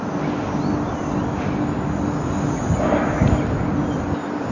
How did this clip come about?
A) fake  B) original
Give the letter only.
B